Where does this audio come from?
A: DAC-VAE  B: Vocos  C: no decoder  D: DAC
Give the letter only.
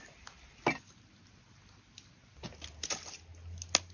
C